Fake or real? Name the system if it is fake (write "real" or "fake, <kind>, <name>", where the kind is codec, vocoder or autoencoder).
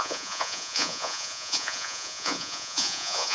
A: fake, vocoder, Vocos